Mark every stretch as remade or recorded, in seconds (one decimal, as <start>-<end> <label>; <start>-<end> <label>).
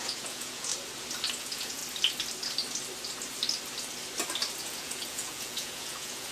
0.0-0.7 remade; 0.7-1.3 recorded; 1.3-1.8 remade; 1.8-4.6 recorded; 4.6-6.3 remade